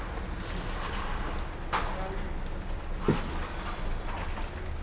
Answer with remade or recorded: recorded